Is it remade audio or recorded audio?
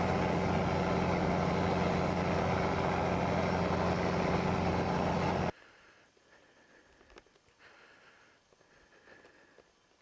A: recorded